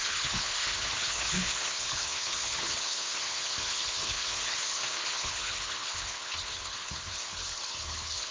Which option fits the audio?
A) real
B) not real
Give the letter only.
B